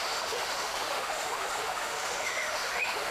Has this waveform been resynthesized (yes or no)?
yes